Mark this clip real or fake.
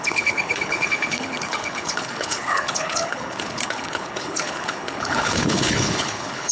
fake